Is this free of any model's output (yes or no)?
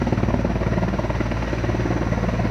yes